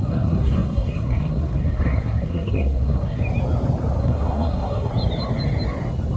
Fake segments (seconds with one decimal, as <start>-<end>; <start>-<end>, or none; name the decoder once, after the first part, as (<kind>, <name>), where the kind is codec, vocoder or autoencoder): 0.0-3.2 (codec, SNAC); 4.0-4.9